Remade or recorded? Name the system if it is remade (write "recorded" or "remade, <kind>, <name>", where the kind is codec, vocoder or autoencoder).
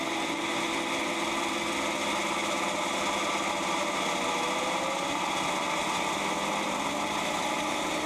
recorded